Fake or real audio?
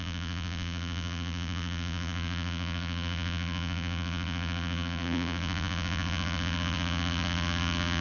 fake